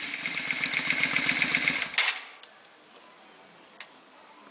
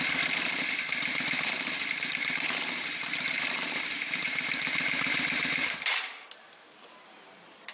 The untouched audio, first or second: first